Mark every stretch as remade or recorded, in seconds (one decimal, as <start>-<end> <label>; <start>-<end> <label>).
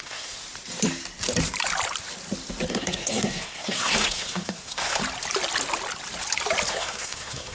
0.0-0.4 remade; 0.4-2.7 recorded; 2.7-5.0 remade; 5.0-6.7 recorded; 6.7-7.5 remade